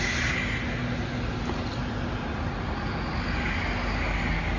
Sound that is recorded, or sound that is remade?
recorded